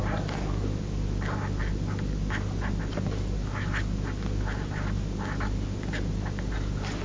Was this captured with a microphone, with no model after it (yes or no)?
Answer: yes